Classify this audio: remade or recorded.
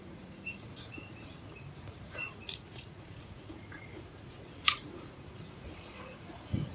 remade